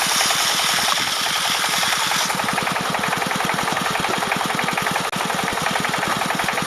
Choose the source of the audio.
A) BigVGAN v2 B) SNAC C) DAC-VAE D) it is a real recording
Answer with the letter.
D